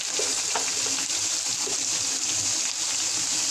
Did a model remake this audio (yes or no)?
no